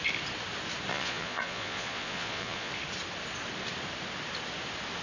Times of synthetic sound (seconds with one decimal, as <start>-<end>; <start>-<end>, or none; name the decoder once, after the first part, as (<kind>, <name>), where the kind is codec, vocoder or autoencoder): 0.9-2.7 (vocoder, Vocos)

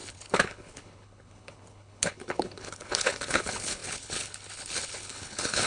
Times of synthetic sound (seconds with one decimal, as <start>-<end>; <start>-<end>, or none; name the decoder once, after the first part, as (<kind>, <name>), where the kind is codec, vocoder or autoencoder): 0.0-5.7 (codec, HILCodec)

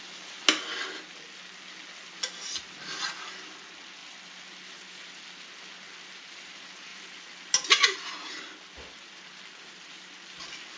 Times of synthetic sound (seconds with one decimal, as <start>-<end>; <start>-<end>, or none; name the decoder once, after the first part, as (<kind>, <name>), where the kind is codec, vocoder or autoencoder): none

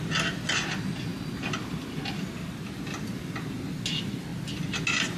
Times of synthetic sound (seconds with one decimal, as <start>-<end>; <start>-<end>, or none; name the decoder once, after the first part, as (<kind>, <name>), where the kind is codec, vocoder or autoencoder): none